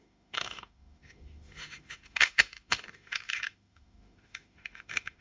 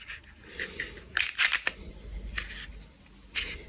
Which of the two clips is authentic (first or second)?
second